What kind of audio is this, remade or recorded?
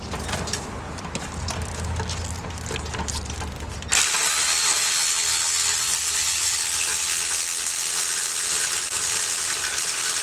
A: recorded